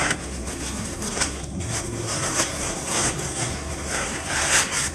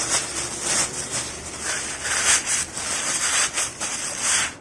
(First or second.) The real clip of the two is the second